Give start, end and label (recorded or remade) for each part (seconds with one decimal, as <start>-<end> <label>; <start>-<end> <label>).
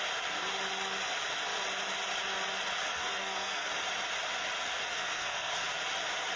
0.0-2.9 recorded; 2.9-3.7 remade; 3.7-4.9 recorded; 4.9-5.5 remade; 5.5-6.4 recorded